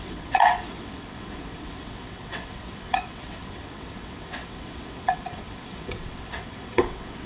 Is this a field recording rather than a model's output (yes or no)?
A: no